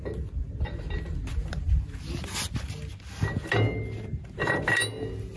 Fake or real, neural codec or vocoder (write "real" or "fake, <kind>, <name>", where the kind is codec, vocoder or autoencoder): real